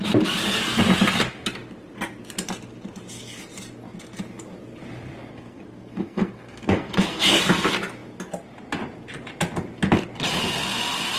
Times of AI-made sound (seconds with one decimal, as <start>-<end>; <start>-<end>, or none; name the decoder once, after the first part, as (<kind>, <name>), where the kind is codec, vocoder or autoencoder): 5.3-7.4 (codec, SNAC)